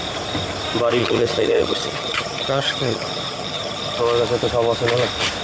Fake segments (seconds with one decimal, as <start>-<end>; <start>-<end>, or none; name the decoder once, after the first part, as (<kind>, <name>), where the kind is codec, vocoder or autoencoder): 1.0-4.0 (vocoder, HiFi-GAN)